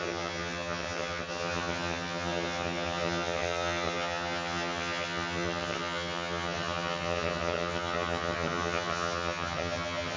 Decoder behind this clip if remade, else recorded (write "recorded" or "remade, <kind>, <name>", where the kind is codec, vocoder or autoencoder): remade, vocoder, HiFi-GAN